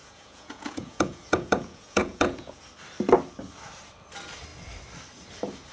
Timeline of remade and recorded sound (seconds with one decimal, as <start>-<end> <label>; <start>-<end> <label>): 0.0-2.6 remade; 2.6-5.7 recorded

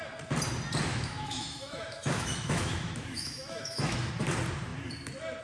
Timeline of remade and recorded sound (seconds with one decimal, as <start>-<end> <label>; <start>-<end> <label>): 0.0-0.9 recorded; 0.9-4.1 remade; 4.1-5.4 recorded